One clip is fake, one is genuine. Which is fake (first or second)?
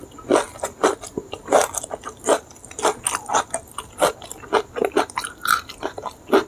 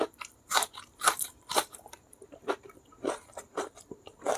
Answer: second